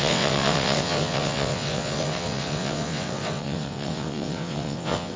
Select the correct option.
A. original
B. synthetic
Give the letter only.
B